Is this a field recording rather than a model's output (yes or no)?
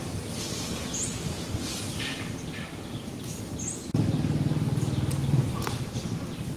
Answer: yes